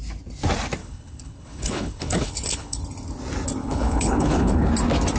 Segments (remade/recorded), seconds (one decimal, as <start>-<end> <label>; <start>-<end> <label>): 0.0-0.8 recorded; 0.8-2.8 remade; 2.8-3.6 recorded; 3.6-4.7 remade; 4.7-5.2 recorded